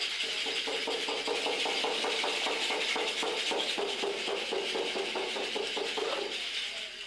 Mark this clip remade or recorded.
recorded